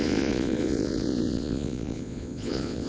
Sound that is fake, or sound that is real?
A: fake